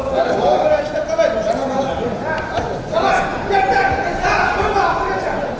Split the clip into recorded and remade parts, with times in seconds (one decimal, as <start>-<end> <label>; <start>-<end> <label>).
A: 0.0-0.8 remade; 0.8-5.6 recorded